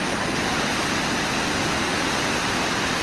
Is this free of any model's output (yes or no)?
yes